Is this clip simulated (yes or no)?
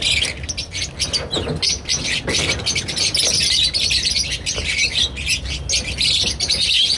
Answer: no